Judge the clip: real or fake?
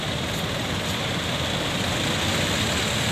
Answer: real